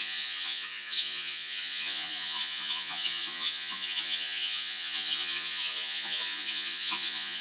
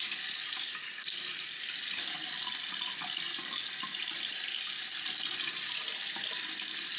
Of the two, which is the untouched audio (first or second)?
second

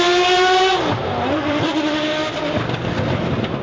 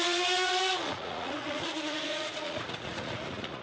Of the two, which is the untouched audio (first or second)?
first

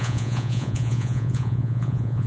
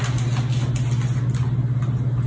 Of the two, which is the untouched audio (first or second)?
second